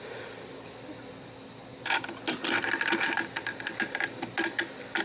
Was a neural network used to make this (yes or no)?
no